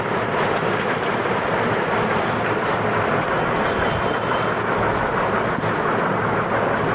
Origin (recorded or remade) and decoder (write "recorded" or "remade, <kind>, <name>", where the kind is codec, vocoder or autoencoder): recorded